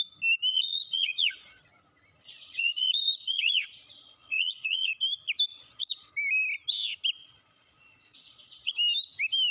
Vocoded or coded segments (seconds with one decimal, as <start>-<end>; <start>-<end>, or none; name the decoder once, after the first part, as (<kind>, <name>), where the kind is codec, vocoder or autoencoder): 0.5-1.6 (vocoder, Vocos); 2.2-4.9; 5.5-6.1; 7.2-8.7